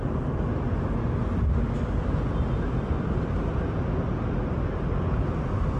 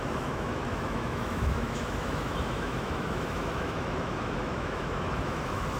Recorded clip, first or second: first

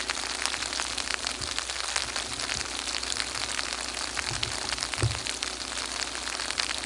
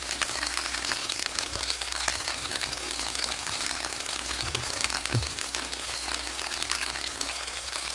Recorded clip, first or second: first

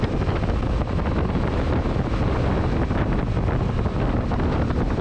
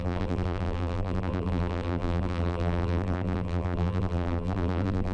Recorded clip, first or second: first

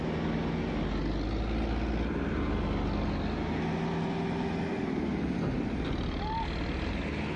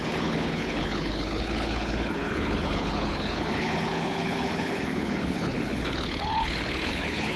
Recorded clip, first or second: first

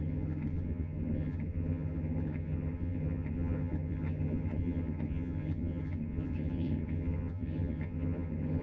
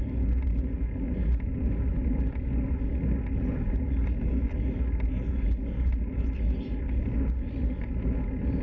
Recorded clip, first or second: second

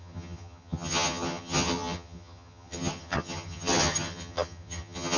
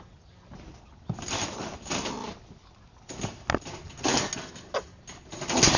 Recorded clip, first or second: second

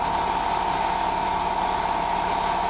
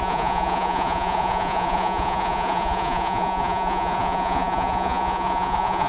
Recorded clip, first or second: first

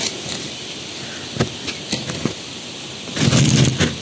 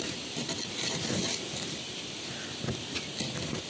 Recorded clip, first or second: first